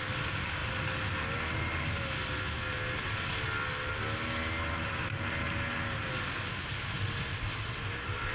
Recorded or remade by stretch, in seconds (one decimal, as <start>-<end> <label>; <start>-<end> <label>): 0.0-8.3 recorded